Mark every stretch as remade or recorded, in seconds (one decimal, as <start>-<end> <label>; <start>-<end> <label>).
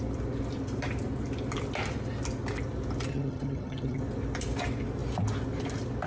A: 0.0-3.1 recorded; 3.1-4.0 remade; 4.0-6.1 recorded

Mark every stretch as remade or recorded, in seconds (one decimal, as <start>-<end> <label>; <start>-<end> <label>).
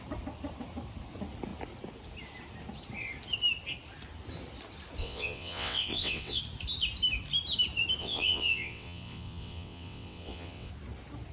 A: 0.0-5.0 recorded; 5.0-6.4 remade; 6.4-8.0 recorded; 8.0-10.7 remade; 10.7-11.3 recorded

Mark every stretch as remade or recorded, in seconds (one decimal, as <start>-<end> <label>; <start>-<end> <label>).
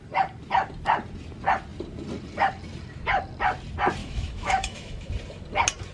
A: 0.0-4.0 recorded; 4.0-5.1 remade; 5.1-5.9 recorded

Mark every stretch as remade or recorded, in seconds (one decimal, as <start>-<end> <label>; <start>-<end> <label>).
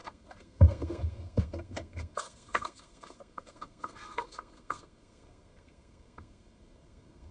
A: 0.0-7.3 remade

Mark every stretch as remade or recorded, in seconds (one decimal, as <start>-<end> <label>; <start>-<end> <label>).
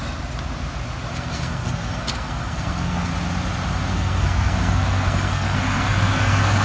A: 0.0-1.1 recorded; 1.1-3.1 remade; 3.1-3.9 recorded; 3.9-6.6 remade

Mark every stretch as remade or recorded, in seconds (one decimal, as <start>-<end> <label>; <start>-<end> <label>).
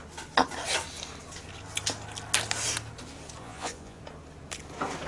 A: 0.0-3.4 recorded; 3.4-4.0 remade; 4.0-5.1 recorded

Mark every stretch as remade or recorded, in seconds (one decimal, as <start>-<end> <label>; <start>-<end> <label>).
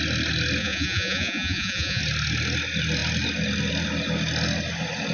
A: 0.0-0.6 recorded; 0.6-2.0 remade; 2.0-5.1 recorded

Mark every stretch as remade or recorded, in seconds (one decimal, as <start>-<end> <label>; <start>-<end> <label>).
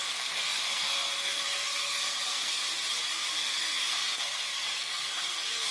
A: 0.0-2.6 remade; 2.6-3.4 recorded; 3.4-5.7 remade